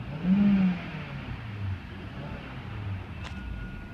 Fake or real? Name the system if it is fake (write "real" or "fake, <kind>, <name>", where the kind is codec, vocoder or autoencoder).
real